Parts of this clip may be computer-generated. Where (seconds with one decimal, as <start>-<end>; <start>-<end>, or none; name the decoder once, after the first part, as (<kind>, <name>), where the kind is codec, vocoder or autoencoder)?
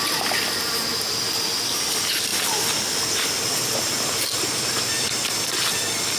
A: none